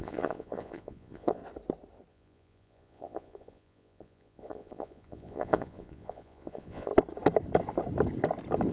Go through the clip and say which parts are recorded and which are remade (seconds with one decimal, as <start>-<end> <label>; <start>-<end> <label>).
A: 0.0-1.4 remade; 1.4-2.1 recorded; 2.1-6.9 remade; 6.9-8.7 recorded